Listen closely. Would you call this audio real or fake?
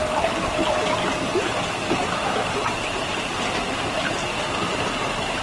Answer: real